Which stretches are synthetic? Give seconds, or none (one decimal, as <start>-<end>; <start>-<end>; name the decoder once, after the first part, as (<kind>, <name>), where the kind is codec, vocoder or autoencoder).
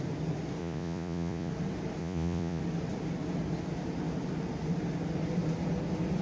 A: 0.6-1.5 (vocoder, Vocos); 2.0-2.6